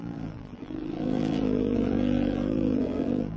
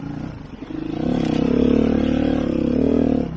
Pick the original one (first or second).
second